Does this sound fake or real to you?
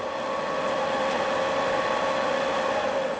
real